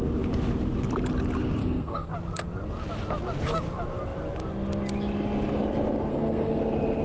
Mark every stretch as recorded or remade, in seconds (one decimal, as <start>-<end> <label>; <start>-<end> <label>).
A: 0.0-1.6 recorded; 1.6-2.1 remade; 2.1-6.1 recorded; 6.1-6.6 remade; 6.6-7.0 recorded